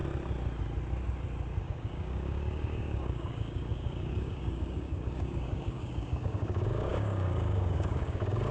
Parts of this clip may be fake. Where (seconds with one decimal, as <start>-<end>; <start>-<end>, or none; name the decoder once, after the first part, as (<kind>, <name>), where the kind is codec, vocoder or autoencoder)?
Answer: 1.6-8.5 (codec, DAC)